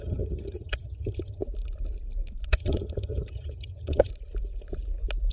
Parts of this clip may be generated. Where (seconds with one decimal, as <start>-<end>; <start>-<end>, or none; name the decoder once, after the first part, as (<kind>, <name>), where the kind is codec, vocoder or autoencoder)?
0.0-1.4 (vocoder, HiFi-GAN); 2.5-4.1